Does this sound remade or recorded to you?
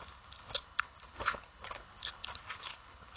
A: remade